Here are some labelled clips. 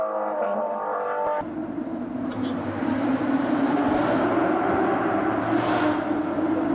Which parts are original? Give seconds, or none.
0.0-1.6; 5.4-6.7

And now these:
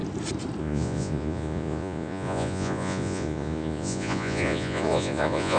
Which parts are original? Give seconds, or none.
0.0-0.6

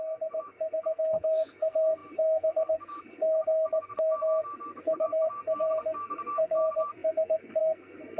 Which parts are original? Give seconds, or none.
none

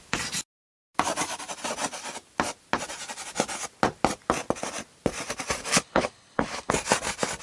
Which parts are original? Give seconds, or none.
0.0-5.7; 6.7-7.4

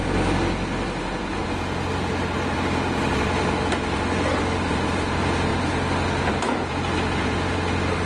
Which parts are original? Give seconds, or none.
0.0-8.1

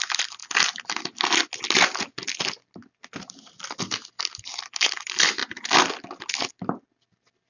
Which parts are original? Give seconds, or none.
0.0-7.5

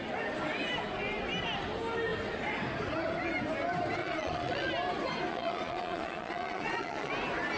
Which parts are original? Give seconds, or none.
0.0-4.0; 4.7-5.3; 7.1-7.6